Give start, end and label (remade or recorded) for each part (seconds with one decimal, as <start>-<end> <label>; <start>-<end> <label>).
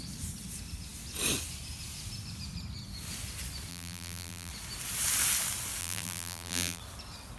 0.0-3.7 recorded; 3.7-4.5 remade; 4.5-5.8 recorded; 5.8-6.8 remade; 6.8-7.4 recorded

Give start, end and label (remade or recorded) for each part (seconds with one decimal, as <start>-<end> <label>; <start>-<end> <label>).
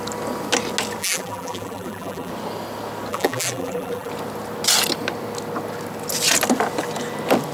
0.0-1.0 recorded; 1.0-2.3 remade; 2.3-3.1 recorded; 3.1-4.1 remade; 4.1-7.5 recorded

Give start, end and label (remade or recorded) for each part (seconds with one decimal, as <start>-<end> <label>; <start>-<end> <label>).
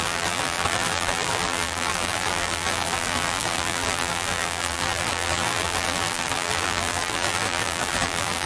0.0-8.5 remade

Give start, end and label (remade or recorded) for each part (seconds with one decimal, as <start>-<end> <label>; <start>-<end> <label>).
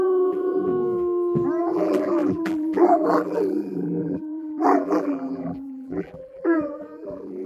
0.0-0.7 remade; 0.7-1.6 recorded; 1.6-7.5 remade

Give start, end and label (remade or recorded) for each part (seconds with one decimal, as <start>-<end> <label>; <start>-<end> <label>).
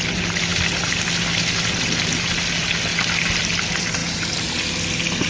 0.0-0.5 recorded; 0.5-1.4 remade; 1.4-4.0 recorded; 4.0-4.7 remade; 4.7-5.3 recorded